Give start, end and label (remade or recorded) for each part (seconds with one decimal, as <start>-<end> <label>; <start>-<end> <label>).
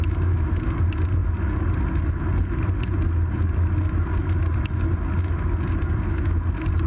0.0-6.9 recorded